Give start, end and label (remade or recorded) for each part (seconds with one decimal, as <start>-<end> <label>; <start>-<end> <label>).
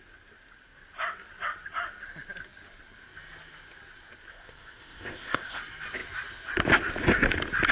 0.0-4.3 recorded; 4.3-5.6 remade; 5.6-7.7 recorded